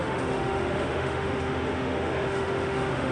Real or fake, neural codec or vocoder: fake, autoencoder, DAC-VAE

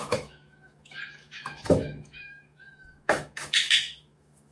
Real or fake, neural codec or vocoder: fake, autoencoder, DAC-VAE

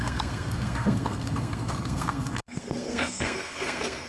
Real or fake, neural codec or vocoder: fake, codec, SNAC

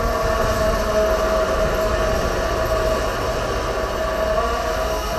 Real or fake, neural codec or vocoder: real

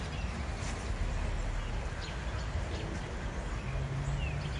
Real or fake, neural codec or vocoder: real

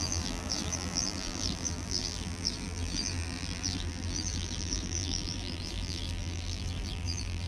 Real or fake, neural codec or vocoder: fake, vocoder, BigVGAN v2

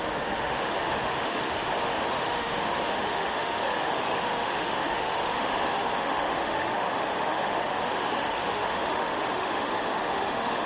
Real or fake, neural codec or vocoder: fake, autoencoder, DAC-VAE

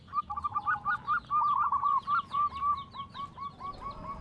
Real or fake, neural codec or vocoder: real